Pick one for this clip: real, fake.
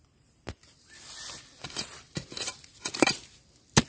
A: real